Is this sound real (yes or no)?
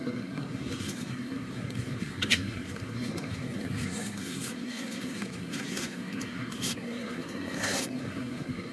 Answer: no